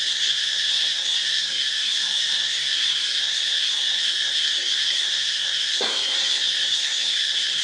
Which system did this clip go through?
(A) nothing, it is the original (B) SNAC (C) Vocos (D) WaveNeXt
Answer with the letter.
B